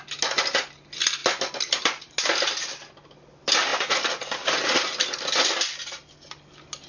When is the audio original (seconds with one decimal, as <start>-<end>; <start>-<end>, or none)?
0.0-6.9